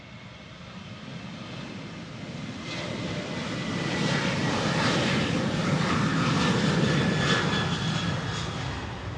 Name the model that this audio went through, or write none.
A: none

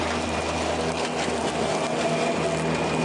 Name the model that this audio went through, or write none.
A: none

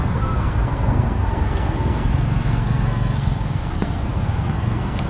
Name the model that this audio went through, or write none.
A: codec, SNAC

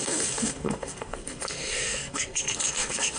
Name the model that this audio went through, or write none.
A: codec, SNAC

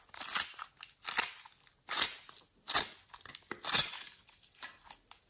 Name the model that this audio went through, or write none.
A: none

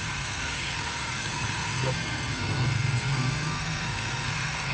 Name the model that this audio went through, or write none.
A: codec, SNAC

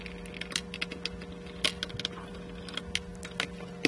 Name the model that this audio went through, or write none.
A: none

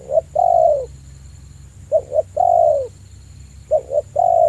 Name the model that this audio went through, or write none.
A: none